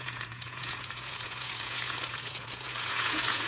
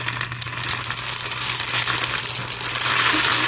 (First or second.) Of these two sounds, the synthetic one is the first